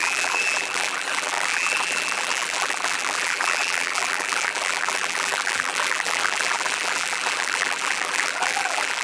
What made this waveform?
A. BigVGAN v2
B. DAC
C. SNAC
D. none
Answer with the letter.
A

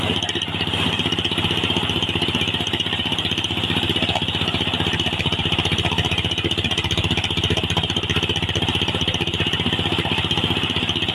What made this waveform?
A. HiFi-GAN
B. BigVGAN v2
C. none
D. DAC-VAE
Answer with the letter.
C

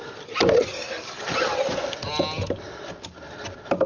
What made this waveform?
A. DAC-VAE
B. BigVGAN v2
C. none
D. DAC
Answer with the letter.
C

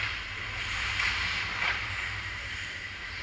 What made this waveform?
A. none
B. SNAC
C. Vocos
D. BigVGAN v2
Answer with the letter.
D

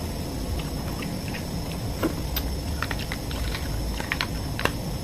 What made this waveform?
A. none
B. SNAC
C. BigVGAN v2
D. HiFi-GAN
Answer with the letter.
A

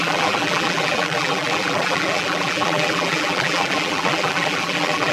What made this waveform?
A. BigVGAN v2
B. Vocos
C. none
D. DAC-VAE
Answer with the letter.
A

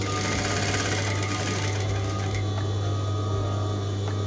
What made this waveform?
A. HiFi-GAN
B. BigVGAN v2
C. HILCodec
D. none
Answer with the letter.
D